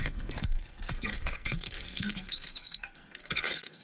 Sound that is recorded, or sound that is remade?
remade